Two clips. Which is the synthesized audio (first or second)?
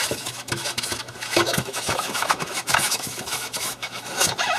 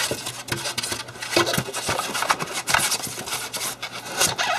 first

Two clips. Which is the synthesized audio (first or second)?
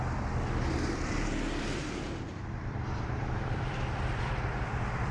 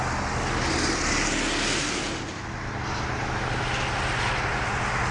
first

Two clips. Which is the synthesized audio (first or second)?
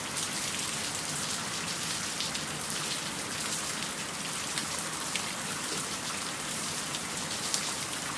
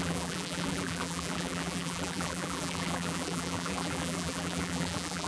second